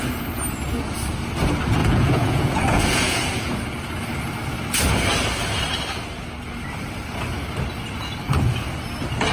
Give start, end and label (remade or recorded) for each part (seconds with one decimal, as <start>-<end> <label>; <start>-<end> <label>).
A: 0.0-1.8 recorded; 1.8-3.5 remade; 3.5-9.3 recorded